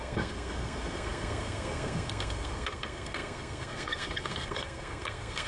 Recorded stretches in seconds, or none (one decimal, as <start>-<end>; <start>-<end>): none